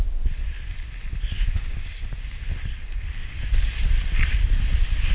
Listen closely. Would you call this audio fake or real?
real